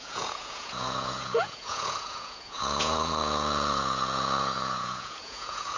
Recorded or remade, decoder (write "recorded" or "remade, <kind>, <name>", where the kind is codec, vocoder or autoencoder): remade, vocoder, Vocos